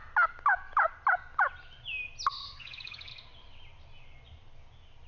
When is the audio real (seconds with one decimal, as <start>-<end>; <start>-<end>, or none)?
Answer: 0.0-2.4; 3.1-5.1